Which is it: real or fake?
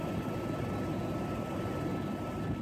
real